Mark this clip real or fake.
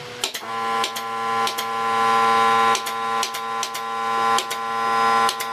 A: real